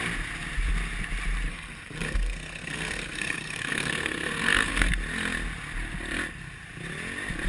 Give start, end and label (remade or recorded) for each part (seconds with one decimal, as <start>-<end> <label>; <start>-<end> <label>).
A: 0.0-1.5 recorded; 1.5-4.9 remade; 4.9-7.5 recorded